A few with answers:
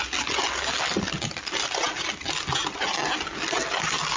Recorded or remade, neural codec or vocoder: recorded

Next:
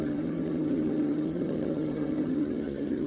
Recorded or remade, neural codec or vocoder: remade, vocoder, HiFi-GAN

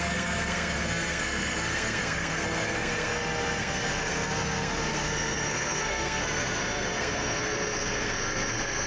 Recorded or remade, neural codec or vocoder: remade, codec, SNAC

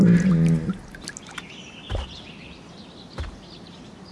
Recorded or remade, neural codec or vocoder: recorded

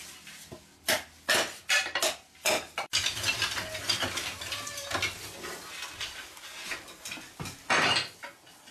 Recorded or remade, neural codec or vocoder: recorded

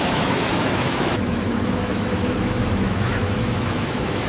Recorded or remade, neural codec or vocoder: remade, autoencoder, DAC-VAE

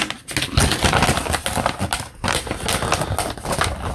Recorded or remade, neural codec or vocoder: recorded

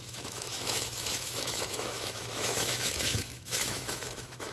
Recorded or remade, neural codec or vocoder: remade, autoencoder, DAC-VAE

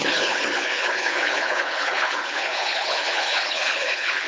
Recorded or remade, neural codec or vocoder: remade, codec, HILCodec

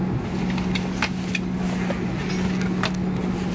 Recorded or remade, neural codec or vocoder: recorded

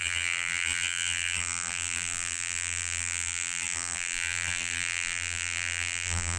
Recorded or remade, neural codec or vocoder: remade, vocoder, BigVGAN v2